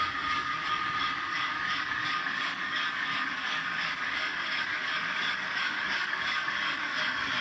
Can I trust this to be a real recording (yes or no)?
no